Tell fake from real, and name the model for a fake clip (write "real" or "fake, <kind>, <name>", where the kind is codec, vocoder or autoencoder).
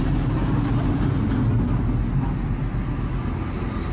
real